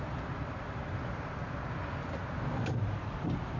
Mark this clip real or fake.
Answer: real